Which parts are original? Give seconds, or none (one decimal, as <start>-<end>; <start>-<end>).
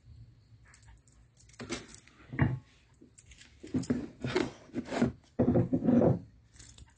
0.0-1.9; 3.2-4.8; 5.4-7.0